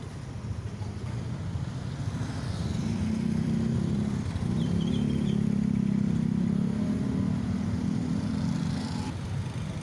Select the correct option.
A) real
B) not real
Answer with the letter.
B